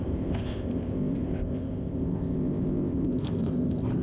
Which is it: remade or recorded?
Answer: remade